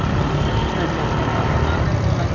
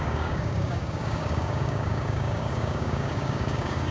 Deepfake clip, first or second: second